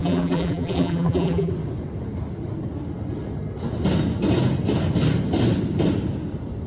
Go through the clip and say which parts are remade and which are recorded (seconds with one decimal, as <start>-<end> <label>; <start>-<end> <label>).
0.0-1.5 remade; 1.5-6.7 recorded